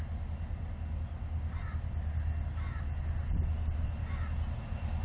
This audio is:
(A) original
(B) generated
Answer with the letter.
A